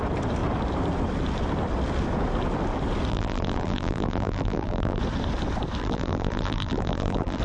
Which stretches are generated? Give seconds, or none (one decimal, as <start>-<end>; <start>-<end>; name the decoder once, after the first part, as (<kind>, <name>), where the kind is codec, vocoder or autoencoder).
3.1-5.0 (vocoder, BigVGAN v2); 5.8-7.4

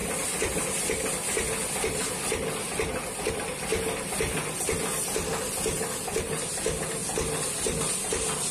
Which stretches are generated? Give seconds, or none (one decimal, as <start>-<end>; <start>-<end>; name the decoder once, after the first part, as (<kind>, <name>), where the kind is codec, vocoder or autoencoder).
3.3-3.7 (vocoder, BigVGAN v2); 5.0-7.0; 7.8-8.5